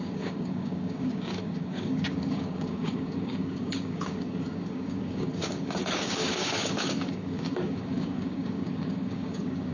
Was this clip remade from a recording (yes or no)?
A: yes